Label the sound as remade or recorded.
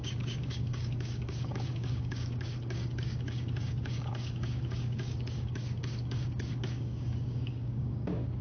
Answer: remade